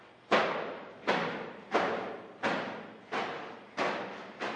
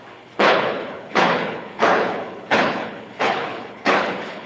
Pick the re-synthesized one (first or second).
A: second